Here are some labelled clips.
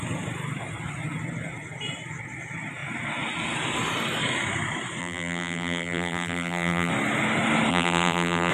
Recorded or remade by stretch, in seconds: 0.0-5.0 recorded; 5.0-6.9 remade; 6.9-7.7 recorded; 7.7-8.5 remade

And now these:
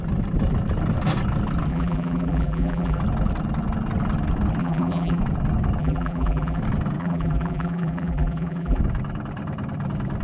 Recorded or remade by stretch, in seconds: 0.0-1.7 recorded; 1.7-3.0 remade; 3.0-4.6 recorded; 4.6-5.2 remade; 5.2-5.8 recorded; 5.8-6.6 remade; 6.6-7.0 recorded; 7.0-8.8 remade; 8.8-10.2 recorded

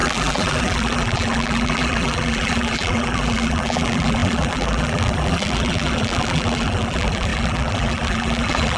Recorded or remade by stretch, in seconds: 0.0-8.8 remade

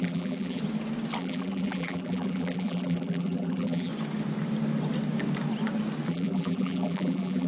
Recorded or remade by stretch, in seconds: 0.0-0.6 remade; 0.6-1.2 recorded; 1.2-3.9 remade; 3.9-6.1 recorded; 6.1-7.5 remade

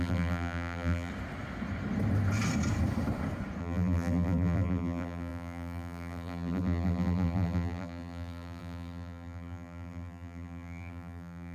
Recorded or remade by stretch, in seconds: 0.0-1.1 remade; 1.1-3.6 recorded; 3.6-11.5 remade

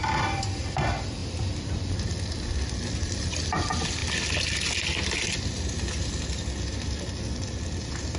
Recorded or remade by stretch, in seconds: 0.0-1.2 recorded; 1.2-1.9 remade; 1.9-8.2 recorded

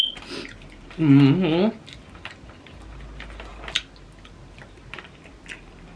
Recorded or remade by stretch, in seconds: 0.0-6.0 recorded